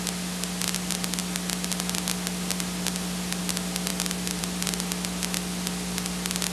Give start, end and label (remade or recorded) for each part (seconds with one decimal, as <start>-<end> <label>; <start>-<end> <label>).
0.0-6.5 recorded